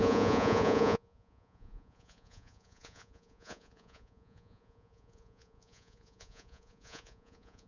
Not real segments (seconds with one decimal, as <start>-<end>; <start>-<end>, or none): 0.0-7.7